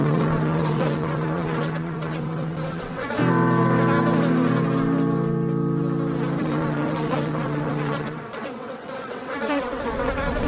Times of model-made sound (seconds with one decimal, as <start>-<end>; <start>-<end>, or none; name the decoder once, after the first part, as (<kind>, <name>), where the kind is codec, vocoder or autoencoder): 0.0-3.2 (vocoder, WaveNeXt); 6.4-10.5

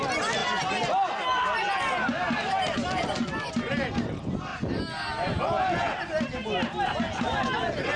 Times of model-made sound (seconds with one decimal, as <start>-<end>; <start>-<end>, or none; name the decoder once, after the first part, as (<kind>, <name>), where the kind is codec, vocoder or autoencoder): none